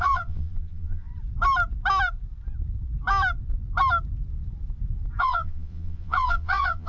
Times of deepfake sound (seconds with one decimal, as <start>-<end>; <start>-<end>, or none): 0.0-1.1; 5.2-6.9